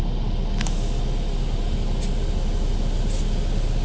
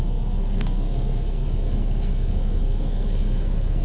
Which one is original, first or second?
first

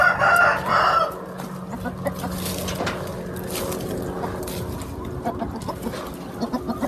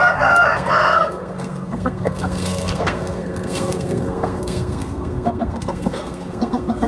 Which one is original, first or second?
first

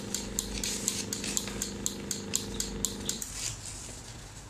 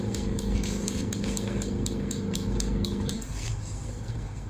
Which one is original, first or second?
first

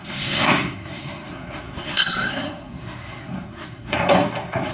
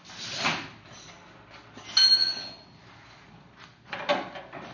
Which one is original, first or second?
second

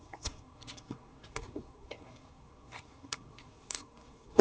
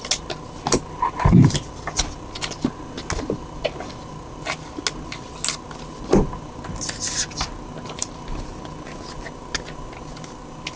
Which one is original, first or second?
second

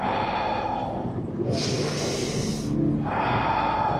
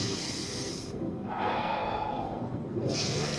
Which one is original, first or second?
first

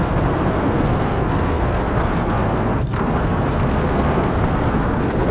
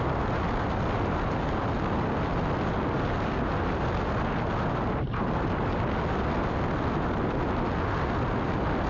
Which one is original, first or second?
second